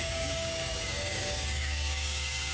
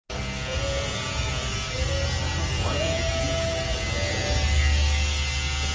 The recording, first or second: second